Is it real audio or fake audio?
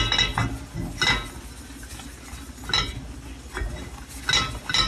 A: real